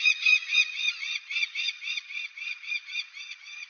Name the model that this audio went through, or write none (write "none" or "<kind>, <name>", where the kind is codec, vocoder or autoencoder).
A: vocoder, Vocos